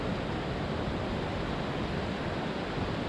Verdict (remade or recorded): recorded